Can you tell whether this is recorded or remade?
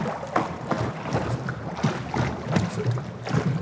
recorded